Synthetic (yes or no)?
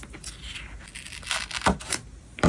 no